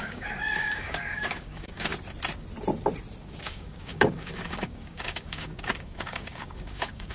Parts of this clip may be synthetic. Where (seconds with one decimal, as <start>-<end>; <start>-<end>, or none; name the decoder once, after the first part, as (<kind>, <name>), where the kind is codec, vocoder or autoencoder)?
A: 0.0-1.9 (codec, DAC); 3.4-7.1